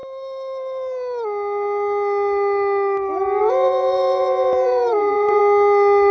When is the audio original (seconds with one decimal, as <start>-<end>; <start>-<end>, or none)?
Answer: 0.0-3.4; 5.4-6.1